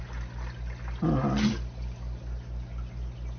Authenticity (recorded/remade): recorded